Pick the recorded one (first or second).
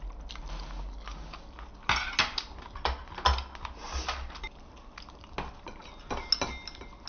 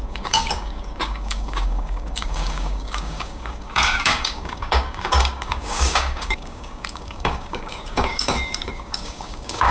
first